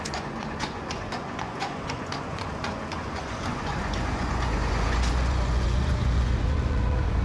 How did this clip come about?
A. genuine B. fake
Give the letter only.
B